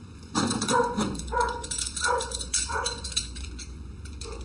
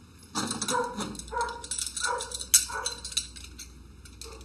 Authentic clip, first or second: second